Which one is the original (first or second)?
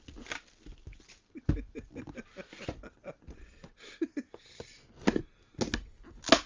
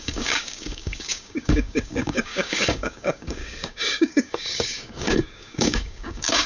first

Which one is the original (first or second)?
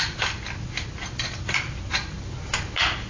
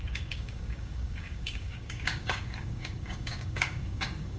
first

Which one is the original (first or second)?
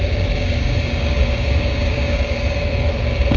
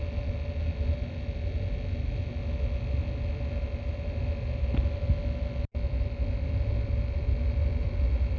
second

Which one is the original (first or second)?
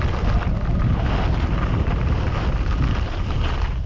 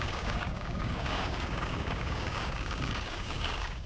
first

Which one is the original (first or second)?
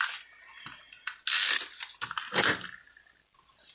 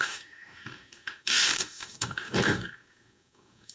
first